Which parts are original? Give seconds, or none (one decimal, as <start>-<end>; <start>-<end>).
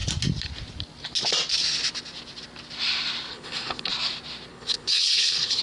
0.0-3.3; 3.9-4.5